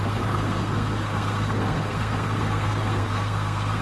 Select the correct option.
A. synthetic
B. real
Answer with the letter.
A